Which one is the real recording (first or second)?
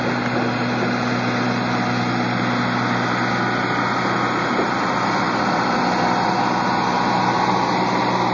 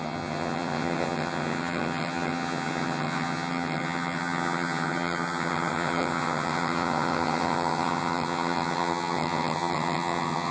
first